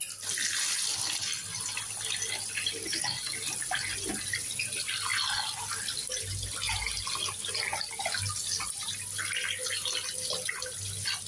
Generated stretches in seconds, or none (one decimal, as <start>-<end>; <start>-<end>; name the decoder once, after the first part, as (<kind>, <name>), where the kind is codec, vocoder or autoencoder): none